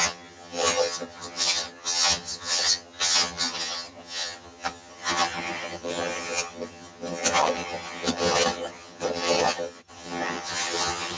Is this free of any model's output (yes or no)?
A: no